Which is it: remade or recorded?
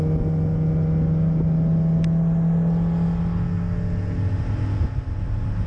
recorded